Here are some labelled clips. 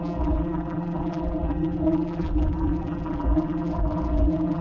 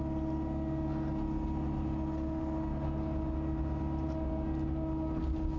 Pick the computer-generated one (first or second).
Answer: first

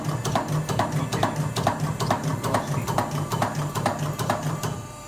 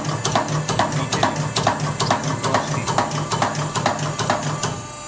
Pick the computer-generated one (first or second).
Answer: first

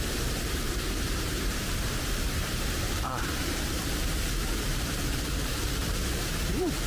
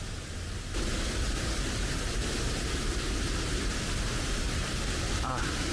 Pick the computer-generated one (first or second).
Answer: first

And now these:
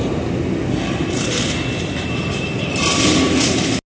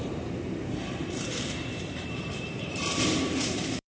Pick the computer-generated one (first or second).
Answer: second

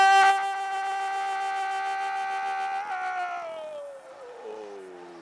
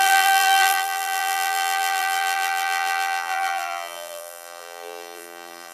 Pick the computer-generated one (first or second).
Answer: second